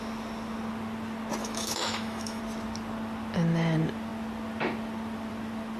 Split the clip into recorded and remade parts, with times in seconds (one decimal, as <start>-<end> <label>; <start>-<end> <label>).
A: 0.0-1.4 recorded; 1.4-2.4 remade; 2.4-5.8 recorded